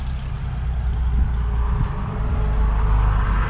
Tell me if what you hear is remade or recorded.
recorded